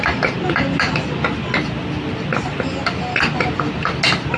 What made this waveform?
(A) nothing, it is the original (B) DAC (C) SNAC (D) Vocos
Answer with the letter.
A